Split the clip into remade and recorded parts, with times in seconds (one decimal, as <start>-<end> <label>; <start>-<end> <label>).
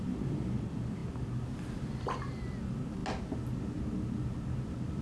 0.0-5.0 recorded